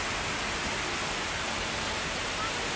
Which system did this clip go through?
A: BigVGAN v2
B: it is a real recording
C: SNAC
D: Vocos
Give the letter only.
B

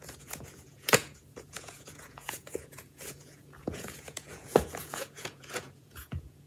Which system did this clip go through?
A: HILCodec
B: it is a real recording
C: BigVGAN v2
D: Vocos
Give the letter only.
D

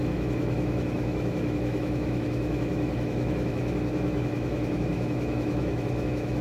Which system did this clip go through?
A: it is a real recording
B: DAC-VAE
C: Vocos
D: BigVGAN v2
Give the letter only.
B